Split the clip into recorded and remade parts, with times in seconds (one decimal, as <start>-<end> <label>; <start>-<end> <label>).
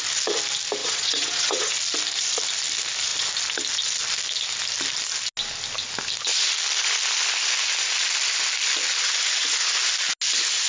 0.0-0.8 recorded; 0.8-1.7 remade; 1.7-10.7 recorded